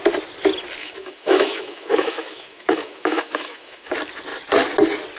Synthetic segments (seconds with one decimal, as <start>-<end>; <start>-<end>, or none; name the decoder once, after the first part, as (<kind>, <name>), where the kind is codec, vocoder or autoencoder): 0.8-3.9 (autoencoder, DAC-VAE)